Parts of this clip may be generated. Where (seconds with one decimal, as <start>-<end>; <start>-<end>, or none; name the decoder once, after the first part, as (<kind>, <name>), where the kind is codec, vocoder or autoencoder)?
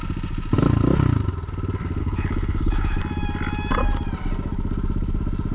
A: 2.0-3.0 (codec, HILCodec)